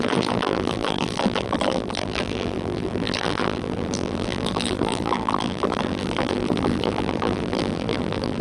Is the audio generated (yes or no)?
yes